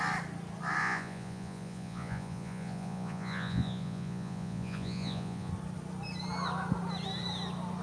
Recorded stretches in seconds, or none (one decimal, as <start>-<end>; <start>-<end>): 0.0-0.8; 5.5-7.8